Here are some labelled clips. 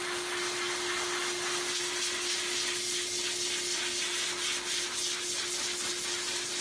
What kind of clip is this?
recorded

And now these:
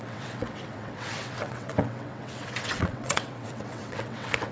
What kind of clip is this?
remade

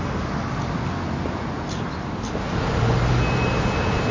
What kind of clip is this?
recorded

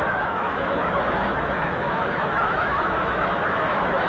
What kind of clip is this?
remade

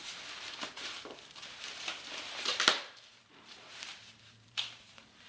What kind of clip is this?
remade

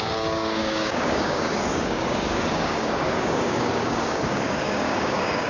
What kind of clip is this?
remade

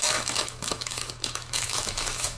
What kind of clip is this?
remade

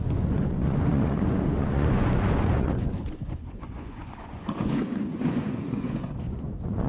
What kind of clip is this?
remade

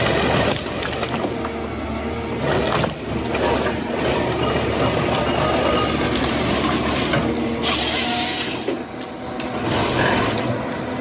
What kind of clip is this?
recorded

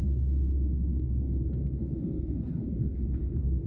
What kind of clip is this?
remade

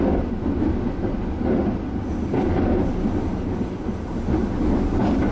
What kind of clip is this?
recorded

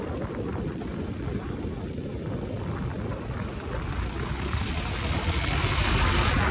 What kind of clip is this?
recorded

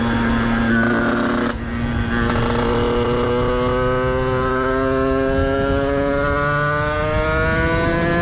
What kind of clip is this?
recorded